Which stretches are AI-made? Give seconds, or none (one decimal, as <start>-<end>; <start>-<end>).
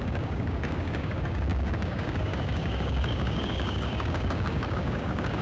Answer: 0.0-5.4